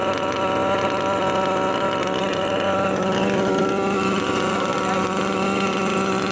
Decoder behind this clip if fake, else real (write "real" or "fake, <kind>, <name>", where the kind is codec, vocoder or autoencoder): real